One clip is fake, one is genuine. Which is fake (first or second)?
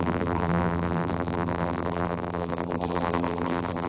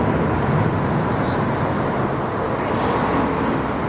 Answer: first